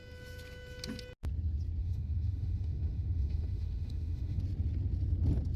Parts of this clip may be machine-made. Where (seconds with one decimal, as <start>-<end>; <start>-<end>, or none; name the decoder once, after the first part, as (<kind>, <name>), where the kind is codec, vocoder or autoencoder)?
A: 1.8-4.4 (autoencoder, DAC-VAE)